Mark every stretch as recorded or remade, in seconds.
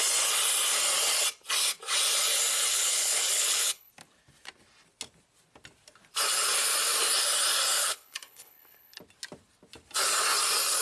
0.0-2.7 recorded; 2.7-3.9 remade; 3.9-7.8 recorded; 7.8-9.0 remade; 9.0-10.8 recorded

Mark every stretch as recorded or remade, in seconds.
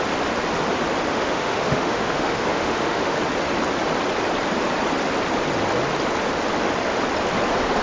0.0-1.1 recorded; 1.1-3.2 remade; 3.2-7.8 recorded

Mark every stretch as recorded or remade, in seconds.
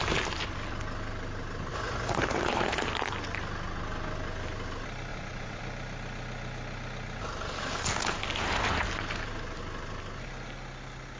0.0-1.7 recorded; 1.7-2.8 remade; 2.8-5.1 recorded; 5.1-5.6 remade; 5.6-11.2 recorded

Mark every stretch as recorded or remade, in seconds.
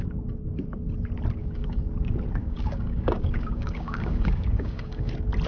0.0-1.4 recorded; 1.4-1.9 remade; 1.9-2.4 recorded; 2.4-5.1 remade; 5.1-5.5 recorded